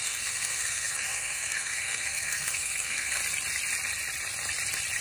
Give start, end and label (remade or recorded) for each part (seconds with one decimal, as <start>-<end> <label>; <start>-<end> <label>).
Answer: 0.0-3.2 remade; 3.2-5.0 recorded